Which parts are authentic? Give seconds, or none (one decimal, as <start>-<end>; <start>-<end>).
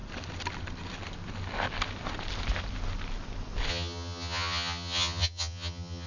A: 0.0-3.7